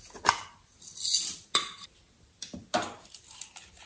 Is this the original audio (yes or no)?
yes